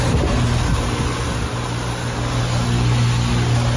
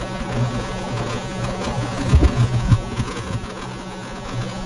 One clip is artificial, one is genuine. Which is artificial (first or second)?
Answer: second